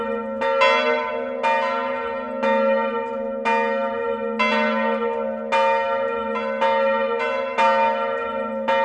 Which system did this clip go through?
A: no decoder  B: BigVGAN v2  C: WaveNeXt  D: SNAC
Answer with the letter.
A